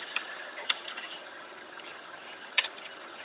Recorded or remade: remade